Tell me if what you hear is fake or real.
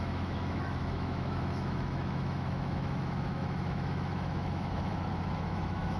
fake